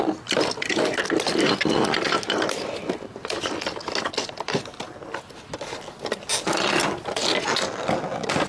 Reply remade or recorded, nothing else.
recorded